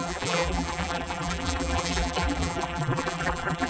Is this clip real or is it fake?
fake